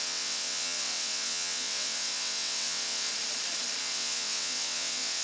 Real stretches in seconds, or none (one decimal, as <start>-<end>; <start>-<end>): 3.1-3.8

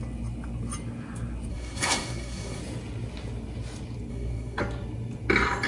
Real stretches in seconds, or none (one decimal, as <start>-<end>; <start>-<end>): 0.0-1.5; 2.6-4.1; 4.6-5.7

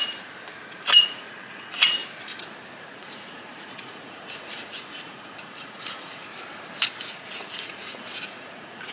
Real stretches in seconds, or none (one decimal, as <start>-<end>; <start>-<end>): 0.0-1.0; 2.0-2.8; 6.3-6.9

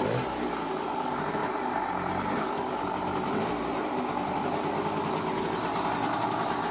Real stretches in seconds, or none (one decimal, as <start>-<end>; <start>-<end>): 0.0-6.7

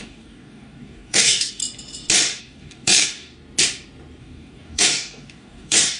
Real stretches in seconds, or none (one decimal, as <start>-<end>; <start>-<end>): 1.6-2.4; 3.3-4.2